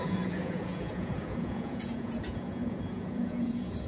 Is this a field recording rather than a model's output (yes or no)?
no